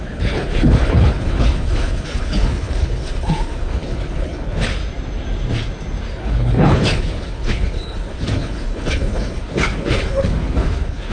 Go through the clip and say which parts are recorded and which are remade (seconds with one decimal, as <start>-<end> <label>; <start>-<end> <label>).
0.0-4.8 remade; 4.8-6.1 recorded; 6.1-11.1 remade